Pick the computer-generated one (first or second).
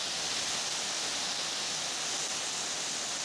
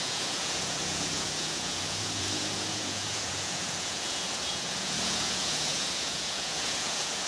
second